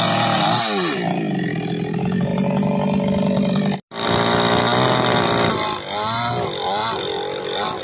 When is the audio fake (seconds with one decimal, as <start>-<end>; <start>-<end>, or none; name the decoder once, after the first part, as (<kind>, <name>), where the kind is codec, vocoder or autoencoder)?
none